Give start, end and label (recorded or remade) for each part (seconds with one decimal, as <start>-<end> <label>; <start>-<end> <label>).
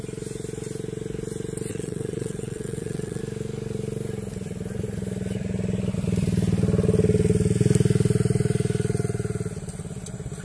0.0-1.7 recorded; 1.7-3.2 remade; 3.2-10.4 recorded